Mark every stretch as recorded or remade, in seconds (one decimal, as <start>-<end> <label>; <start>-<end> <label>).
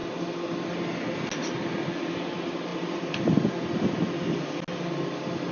0.0-5.5 recorded